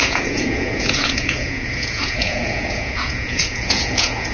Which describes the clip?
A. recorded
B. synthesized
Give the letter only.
B